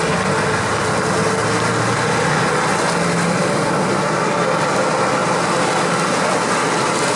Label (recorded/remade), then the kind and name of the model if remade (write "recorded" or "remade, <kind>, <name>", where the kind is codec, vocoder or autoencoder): recorded